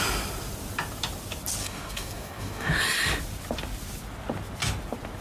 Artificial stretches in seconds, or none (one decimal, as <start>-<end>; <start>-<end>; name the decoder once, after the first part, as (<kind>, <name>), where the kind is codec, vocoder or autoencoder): 1.6-2.8 (codec, DAC)